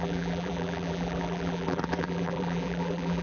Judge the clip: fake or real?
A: fake